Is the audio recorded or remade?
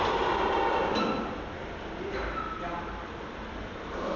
recorded